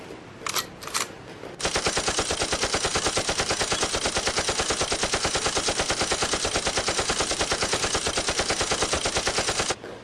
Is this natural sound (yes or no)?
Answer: yes